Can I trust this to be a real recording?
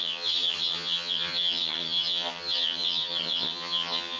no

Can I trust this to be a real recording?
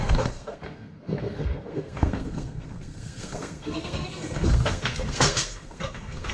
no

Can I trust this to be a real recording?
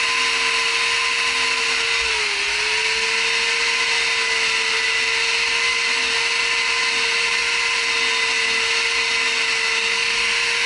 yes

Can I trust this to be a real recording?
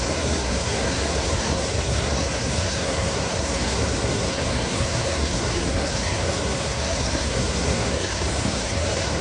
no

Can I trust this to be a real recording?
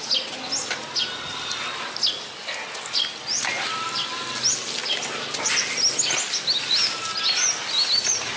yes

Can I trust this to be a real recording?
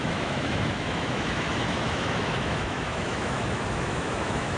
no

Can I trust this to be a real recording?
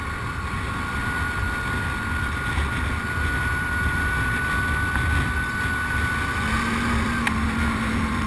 yes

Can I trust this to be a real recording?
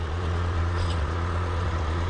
no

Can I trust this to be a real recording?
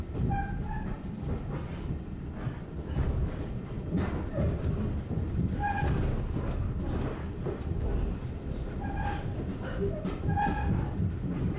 yes